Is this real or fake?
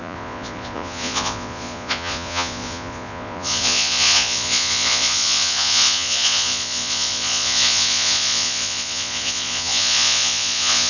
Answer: fake